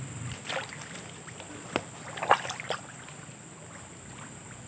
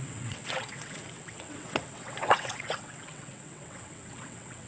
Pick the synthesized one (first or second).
second